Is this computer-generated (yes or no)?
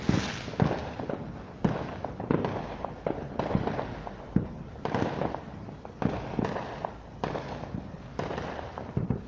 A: no